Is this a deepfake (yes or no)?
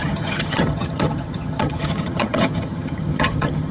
yes